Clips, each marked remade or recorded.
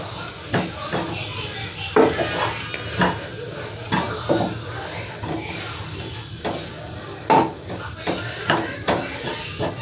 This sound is recorded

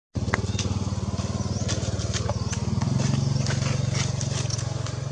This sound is recorded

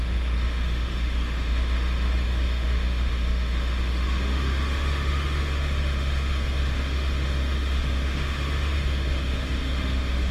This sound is remade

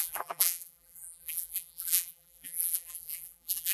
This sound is remade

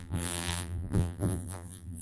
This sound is remade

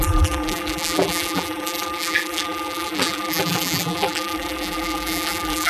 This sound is remade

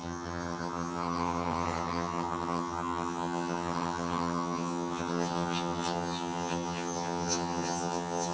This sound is remade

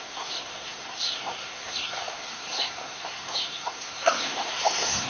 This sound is remade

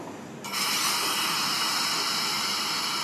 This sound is recorded